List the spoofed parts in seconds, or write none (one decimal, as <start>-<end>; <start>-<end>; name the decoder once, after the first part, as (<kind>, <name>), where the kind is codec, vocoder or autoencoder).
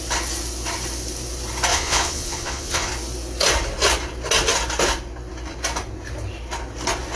1.7-2.9 (vocoder, Vocos)